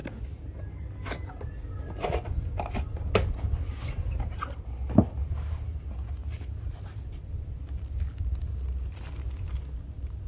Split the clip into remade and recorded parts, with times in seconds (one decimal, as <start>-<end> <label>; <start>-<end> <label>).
0.0-6.2 recorded; 6.2-7.8 remade; 7.8-10.3 recorded